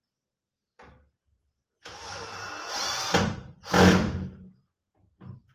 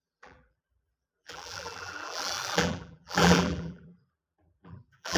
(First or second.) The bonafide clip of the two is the first